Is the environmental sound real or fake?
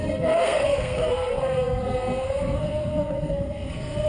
fake